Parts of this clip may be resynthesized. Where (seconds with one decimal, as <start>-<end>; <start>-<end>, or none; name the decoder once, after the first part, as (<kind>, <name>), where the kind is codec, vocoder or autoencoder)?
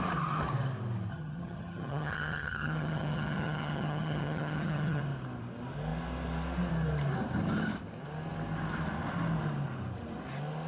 1.1-5.0 (vocoder, HiFi-GAN)